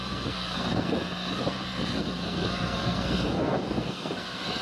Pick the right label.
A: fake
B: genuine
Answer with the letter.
A